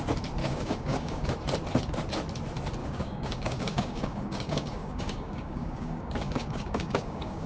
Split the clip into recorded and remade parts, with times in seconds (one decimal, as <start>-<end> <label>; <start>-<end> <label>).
0.0-0.4 recorded; 0.4-1.3 remade; 1.3-2.8 recorded; 2.8-7.5 remade